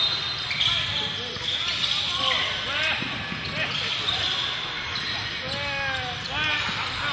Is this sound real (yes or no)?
yes